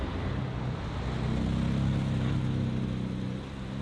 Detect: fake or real real